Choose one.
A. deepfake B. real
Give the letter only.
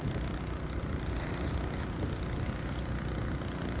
B